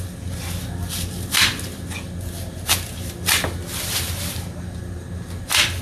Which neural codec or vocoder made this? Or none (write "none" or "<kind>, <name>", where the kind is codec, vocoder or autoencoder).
none